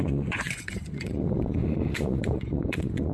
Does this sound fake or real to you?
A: fake